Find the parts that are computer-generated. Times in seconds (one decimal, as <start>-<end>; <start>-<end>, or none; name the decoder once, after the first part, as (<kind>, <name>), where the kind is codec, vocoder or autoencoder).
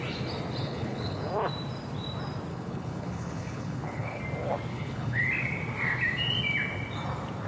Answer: 0.6-1.3 (codec, HILCodec); 2.5-4.2; 4.7-5.3